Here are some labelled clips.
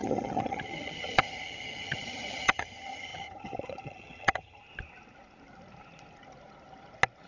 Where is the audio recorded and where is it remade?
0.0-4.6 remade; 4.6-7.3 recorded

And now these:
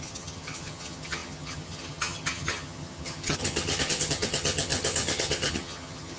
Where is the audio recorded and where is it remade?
0.0-6.2 remade

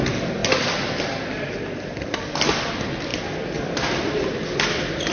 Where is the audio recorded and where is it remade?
0.0-5.1 recorded

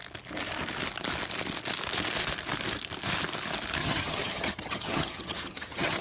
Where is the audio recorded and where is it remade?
0.0-3.8 recorded; 3.8-6.0 remade

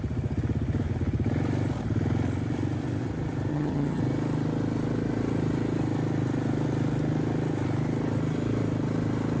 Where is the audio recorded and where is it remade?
0.0-3.5 recorded; 3.5-4.0 remade; 4.0-9.4 recorded

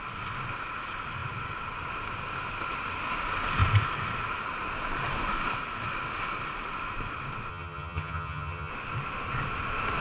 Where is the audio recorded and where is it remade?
0.0-7.5 recorded; 7.5-8.7 remade; 8.7-10.0 recorded

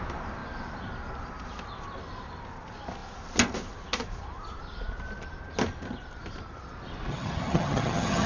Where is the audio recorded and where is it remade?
0.0-7.1 recorded; 7.1-8.3 remade

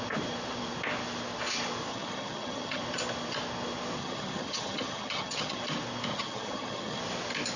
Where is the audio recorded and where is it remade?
0.0-1.9 recorded; 1.9-2.8 remade; 2.8-4.0 recorded; 4.0-5.6 remade; 5.6-6.1 recorded; 6.1-7.0 remade; 7.0-7.6 recorded